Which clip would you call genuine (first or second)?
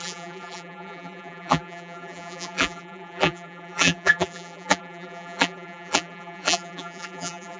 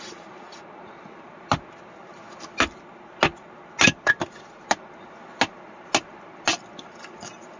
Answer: second